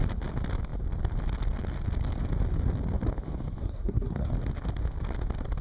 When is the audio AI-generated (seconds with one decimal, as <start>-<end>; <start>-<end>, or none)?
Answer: 3.6-4.3